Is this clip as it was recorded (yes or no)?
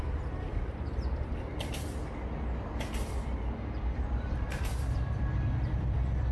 yes